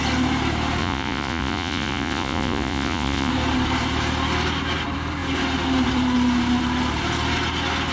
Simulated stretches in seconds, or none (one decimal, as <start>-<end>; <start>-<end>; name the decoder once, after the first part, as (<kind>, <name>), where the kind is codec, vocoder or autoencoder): 0.8-3.3 (vocoder, Vocos)